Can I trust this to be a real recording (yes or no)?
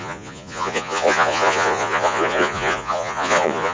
no